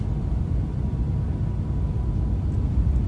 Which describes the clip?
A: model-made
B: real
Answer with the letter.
B